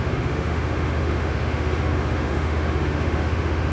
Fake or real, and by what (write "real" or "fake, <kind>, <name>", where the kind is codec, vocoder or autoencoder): fake, autoencoder, DAC-VAE